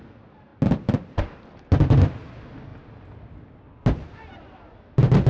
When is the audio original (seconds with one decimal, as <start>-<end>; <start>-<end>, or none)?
0.0-5.3